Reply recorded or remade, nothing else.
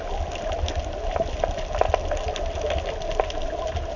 recorded